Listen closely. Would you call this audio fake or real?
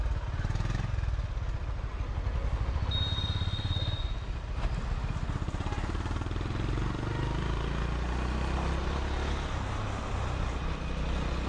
real